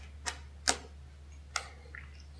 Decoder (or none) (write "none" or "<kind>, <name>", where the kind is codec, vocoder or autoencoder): none